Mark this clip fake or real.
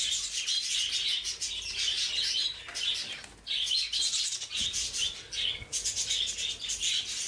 real